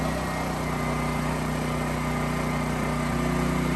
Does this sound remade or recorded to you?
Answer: recorded